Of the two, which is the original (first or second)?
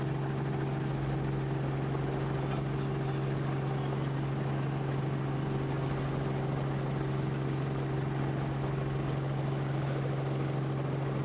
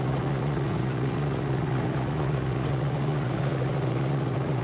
first